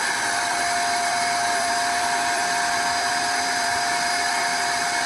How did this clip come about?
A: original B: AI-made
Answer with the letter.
B